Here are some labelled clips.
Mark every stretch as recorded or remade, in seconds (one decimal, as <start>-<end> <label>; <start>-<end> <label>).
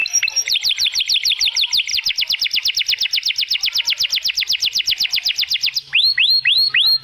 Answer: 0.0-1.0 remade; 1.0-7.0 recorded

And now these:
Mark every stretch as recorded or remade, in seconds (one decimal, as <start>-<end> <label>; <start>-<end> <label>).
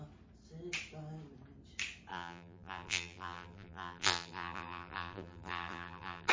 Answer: 0.0-2.1 recorded; 2.1-6.3 remade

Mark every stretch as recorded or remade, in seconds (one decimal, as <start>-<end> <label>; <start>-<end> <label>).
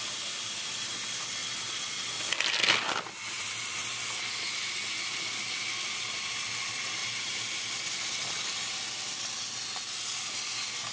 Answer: 0.0-7.0 recorded; 7.0-7.6 remade; 7.6-10.9 recorded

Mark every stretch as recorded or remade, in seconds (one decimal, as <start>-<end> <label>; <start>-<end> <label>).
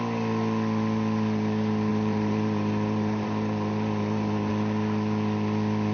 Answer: 0.0-1.9 recorded; 1.9-4.5 remade; 4.5-5.9 recorded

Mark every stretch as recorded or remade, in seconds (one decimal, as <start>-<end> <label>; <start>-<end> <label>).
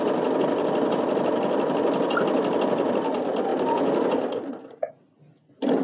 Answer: 0.0-5.8 recorded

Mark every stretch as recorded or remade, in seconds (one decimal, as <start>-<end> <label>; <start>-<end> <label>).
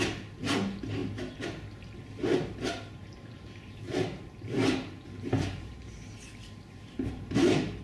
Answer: 0.0-3.0 recorded; 3.0-7.8 remade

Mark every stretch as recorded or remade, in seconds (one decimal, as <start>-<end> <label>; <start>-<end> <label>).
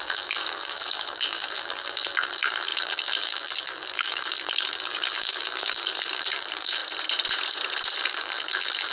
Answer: 0.0-6.8 remade; 6.8-8.0 recorded; 8.0-8.9 remade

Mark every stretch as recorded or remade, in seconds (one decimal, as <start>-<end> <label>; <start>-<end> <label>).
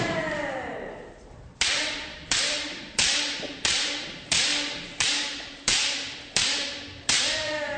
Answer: 0.0-4.5 remade; 4.5-5.0 recorded; 5.0-7.8 remade